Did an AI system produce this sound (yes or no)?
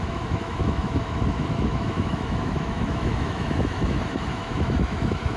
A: yes